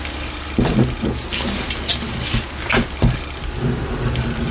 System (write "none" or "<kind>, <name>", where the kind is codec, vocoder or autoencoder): none